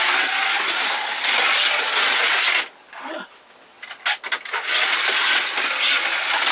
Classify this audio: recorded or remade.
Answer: recorded